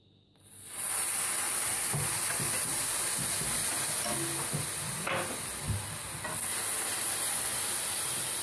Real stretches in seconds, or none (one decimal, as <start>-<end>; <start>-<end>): 0.0-8.4